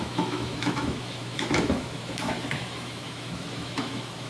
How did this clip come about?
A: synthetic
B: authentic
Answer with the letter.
A